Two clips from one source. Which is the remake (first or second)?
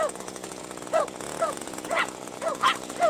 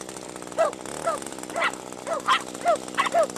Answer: first